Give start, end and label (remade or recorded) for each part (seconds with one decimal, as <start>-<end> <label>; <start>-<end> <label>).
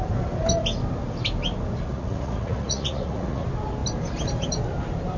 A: 0.0-1.9 recorded; 1.9-3.4 remade; 3.4-5.2 recorded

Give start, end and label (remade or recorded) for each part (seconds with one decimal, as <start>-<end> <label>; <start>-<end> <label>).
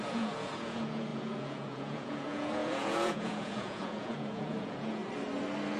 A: 0.0-5.0 remade; 5.0-5.8 recorded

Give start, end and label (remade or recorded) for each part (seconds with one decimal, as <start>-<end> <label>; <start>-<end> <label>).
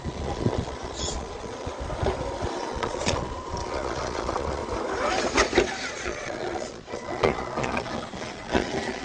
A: 0.0-1.7 remade; 1.7-2.6 recorded; 2.6-4.6 remade; 4.6-5.9 recorded; 5.9-9.0 remade